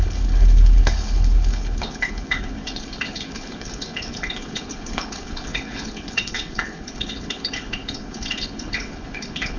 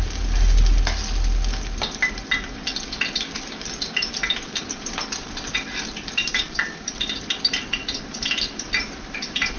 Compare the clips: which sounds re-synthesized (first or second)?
first